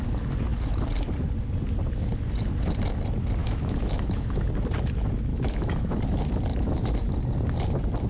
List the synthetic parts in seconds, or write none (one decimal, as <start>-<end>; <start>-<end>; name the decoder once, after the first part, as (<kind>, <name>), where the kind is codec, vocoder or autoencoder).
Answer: 3.4-4.5 (autoencoder, DAC-VAE); 5.3-6.0; 6.5-7.1